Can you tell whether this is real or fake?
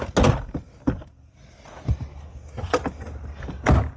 real